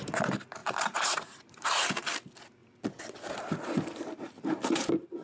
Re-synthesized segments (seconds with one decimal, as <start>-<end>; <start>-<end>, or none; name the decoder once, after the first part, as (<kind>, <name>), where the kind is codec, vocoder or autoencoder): 0.6-1.5 (vocoder, BigVGAN v2)